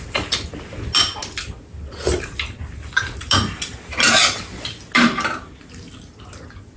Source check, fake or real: real